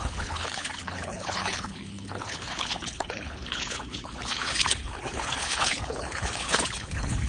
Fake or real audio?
fake